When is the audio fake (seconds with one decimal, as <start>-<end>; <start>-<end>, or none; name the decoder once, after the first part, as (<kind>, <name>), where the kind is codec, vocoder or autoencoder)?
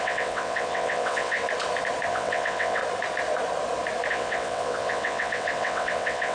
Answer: 0.0-1.4 (vocoder, WaveNeXt); 2.1-2.8; 4.1-6.3